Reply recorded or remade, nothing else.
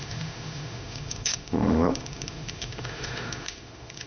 remade